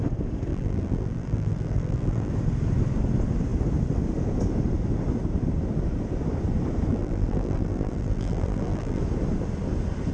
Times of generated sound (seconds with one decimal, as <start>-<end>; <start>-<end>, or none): 0.5-2.3; 6.9-9.0